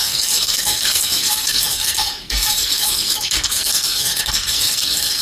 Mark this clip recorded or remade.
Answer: remade